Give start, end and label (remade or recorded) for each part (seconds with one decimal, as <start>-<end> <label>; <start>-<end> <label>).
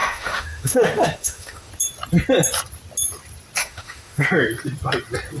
0.0-1.7 remade; 1.7-3.6 recorded; 3.6-4.3 remade; 4.3-5.4 recorded